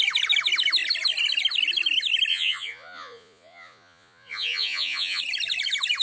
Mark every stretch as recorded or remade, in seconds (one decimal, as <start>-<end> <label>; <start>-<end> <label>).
0.0-2.3 recorded; 2.3-5.2 remade; 5.2-6.0 recorded